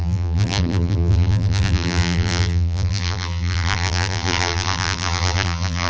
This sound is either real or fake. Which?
fake